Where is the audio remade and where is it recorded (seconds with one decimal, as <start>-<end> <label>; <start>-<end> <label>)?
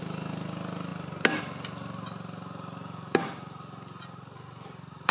0.0-5.1 recorded